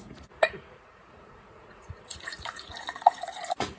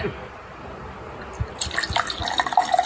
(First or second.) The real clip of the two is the second